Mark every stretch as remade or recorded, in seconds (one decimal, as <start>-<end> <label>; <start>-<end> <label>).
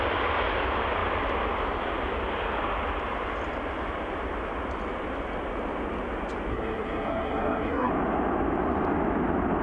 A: 0.0-6.5 recorded; 6.5-7.9 remade; 7.9-9.6 recorded